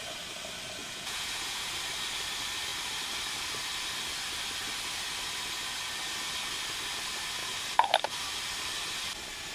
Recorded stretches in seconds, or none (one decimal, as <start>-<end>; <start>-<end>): 0.0-0.8; 1.7-9.5